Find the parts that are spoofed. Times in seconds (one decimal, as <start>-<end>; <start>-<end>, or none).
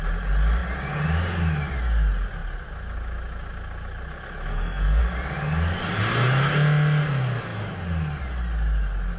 4.5-5.0